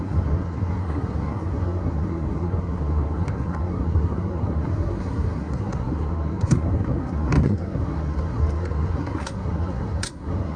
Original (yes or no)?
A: no